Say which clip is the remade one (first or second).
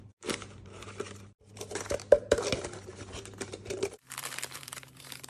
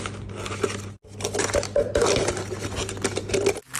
first